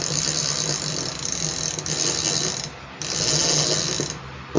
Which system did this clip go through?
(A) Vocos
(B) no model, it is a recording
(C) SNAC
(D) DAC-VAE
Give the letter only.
B